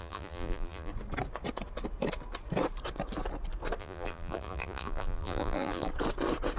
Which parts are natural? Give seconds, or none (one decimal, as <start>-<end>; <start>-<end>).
0.9-3.8; 5.9-6.6